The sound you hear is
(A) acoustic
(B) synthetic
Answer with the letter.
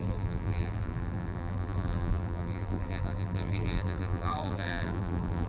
B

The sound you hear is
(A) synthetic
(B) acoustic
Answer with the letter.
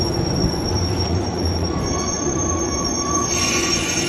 A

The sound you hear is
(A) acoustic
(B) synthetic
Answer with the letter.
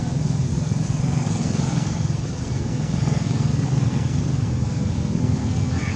B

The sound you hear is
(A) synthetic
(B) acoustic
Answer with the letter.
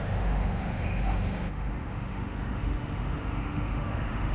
A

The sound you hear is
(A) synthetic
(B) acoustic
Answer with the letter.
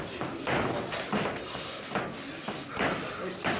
B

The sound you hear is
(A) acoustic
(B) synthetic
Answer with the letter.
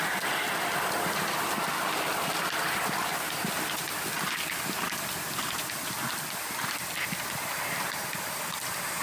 A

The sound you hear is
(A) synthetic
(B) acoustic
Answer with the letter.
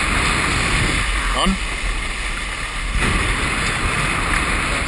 B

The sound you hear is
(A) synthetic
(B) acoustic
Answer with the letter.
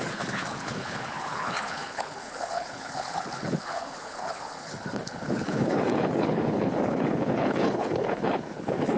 A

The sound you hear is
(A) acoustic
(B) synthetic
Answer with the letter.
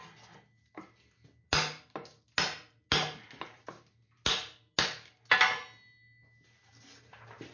A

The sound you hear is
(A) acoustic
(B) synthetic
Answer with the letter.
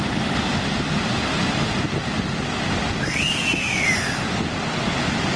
A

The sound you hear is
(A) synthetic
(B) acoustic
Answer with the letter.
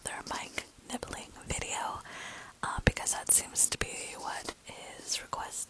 B